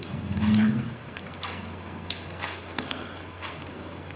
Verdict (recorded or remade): remade